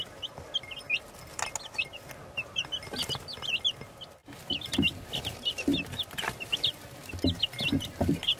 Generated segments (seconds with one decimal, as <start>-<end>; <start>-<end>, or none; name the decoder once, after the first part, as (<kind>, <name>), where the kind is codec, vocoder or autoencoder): none